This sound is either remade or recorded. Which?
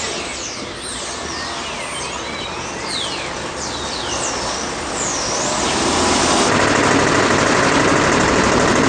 recorded